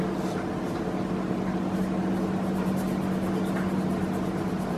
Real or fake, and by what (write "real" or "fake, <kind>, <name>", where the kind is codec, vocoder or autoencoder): real